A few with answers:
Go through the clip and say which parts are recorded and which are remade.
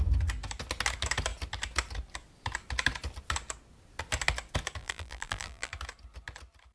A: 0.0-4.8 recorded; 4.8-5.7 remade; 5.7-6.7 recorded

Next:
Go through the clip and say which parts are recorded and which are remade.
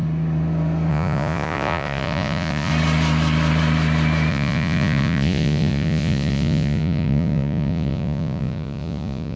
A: 0.0-0.9 recorded; 0.9-2.7 remade; 2.7-4.3 recorded; 4.3-9.4 remade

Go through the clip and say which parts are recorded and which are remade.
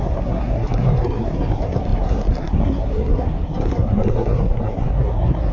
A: 0.0-5.5 remade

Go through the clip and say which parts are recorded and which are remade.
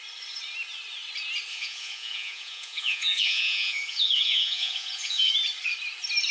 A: 0.0-1.5 recorded; 1.5-5.3 remade; 5.3-6.3 recorded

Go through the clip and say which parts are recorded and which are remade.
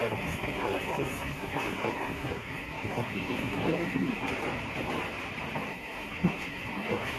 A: 0.0-4.3 remade; 4.3-5.7 recorded; 5.7-7.2 remade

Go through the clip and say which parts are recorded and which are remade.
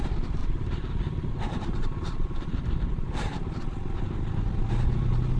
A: 0.0-0.4 recorded; 0.4-3.6 remade; 3.6-5.4 recorded